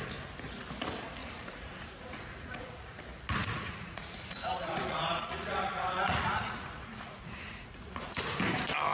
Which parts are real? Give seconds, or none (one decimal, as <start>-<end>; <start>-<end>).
0.0-1.2; 3.0-3.4; 8.4-8.9